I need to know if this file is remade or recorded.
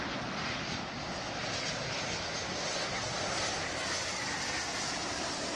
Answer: recorded